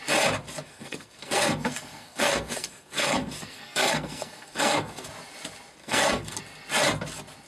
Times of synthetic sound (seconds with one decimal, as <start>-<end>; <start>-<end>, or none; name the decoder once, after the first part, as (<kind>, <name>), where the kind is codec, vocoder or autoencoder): 0.6-5.1 (codec, SNAC); 5.8-6.4